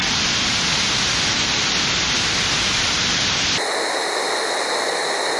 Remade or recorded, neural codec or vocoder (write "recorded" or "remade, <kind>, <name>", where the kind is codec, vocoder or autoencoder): recorded